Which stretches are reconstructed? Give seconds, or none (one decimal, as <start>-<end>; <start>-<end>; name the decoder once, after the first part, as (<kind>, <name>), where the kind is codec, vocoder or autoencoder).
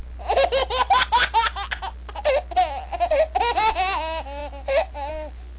none